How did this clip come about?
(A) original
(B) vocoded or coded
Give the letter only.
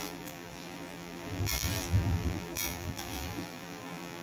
B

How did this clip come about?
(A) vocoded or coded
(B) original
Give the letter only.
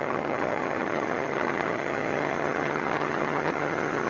A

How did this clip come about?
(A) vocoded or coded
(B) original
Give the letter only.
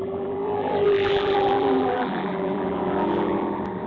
A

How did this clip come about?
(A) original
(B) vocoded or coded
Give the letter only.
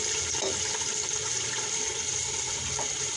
B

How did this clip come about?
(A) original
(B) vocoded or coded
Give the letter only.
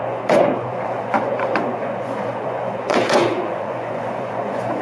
B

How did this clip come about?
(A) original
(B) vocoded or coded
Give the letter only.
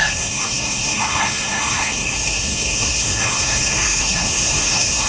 B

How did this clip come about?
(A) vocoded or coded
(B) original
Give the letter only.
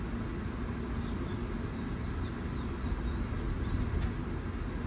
B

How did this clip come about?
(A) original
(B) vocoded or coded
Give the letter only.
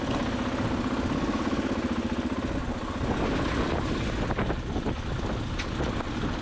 A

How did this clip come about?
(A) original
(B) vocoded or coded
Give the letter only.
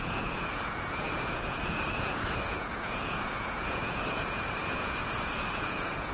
B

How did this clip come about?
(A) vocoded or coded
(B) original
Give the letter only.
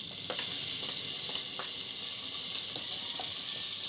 B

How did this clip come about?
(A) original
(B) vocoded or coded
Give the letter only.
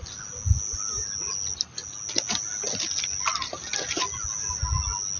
A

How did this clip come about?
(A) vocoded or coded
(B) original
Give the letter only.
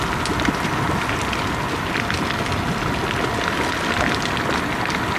B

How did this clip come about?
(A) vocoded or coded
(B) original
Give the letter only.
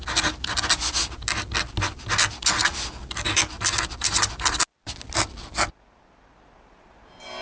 B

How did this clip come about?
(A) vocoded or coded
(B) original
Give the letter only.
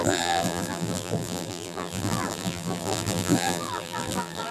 A